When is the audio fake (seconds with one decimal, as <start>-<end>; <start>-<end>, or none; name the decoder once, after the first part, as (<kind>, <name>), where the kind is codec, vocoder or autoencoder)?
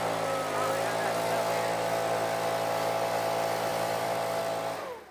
3.7-4.4 (vocoder, BigVGAN v2)